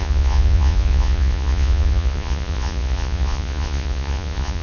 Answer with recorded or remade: remade